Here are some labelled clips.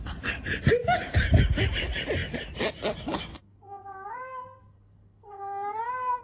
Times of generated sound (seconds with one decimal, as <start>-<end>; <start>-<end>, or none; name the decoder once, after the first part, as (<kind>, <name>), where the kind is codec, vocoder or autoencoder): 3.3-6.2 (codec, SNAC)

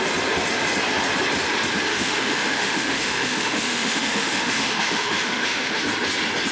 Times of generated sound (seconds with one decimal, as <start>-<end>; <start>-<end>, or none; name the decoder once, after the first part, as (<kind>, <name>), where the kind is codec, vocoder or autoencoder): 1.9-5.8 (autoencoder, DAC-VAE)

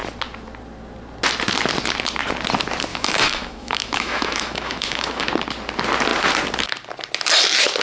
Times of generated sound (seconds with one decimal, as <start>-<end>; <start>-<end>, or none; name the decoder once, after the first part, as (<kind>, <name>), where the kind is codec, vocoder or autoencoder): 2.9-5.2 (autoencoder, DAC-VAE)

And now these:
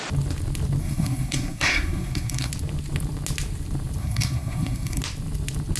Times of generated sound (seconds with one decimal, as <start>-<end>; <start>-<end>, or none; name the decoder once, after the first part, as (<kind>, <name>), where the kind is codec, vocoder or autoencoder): 0.8-2.5 (codec, SNAC); 4.0-5.0

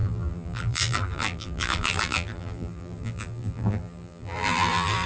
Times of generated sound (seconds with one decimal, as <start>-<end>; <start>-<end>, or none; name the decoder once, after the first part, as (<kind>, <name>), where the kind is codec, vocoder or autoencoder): 0.0-5.1 (vocoder, BigVGAN v2)

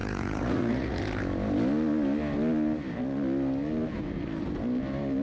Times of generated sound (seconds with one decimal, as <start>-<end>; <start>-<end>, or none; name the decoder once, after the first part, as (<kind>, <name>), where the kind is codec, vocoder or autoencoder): 0.0-1.0 (vocoder, Vocos)